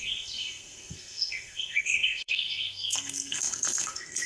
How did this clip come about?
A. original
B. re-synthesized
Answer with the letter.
B